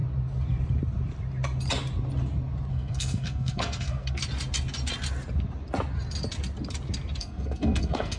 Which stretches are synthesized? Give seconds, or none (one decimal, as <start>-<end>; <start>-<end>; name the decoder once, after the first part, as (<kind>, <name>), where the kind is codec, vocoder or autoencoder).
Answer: 2.7-4.2 (codec, SNAC); 7.2-8.2